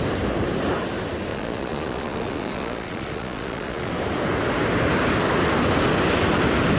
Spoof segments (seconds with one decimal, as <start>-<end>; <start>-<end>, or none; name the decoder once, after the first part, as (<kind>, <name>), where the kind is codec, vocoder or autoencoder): 1.3-3.9 (vocoder, Vocos)